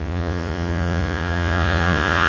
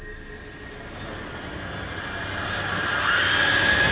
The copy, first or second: first